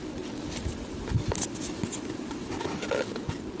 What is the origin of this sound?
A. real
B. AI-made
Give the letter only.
A